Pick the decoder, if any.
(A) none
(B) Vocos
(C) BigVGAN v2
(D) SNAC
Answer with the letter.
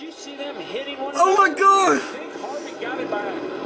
A